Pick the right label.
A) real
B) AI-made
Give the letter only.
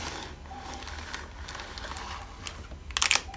A